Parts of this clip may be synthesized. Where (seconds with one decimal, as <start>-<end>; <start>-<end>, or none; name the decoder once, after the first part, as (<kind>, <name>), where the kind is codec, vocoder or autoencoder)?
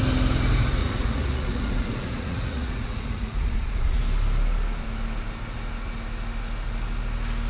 0.8-4.0 (vocoder, Vocos)